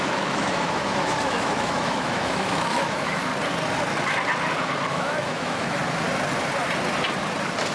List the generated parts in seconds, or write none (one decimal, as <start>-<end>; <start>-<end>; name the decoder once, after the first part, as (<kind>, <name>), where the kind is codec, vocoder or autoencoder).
0.0-3.3 (autoencoder, DAC-VAE); 4.9-5.8